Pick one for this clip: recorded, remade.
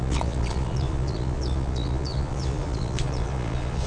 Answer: remade